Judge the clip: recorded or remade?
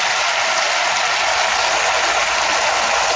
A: recorded